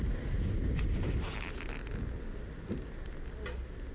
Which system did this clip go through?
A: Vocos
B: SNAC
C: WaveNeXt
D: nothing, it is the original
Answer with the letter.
D